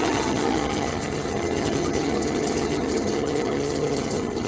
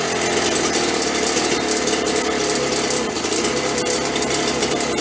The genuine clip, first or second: second